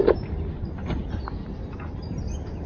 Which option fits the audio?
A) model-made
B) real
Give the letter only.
B